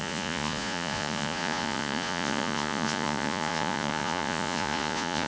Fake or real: fake